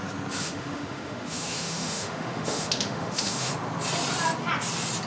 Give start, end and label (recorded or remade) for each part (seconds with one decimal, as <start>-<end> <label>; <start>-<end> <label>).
0.0-0.4 recorded; 0.4-3.5 remade; 3.5-5.1 recorded